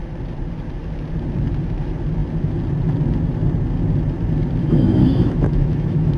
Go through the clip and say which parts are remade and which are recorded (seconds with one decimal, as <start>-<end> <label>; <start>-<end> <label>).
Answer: 0.0-4.6 recorded; 4.6-6.2 remade